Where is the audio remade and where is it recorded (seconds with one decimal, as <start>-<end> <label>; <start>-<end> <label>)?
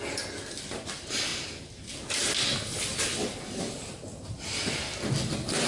0.0-5.7 recorded